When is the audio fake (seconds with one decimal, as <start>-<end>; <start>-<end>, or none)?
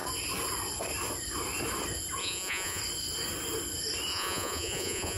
2.2-2.8; 4.1-5.2